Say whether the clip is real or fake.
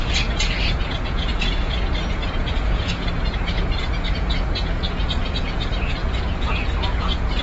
fake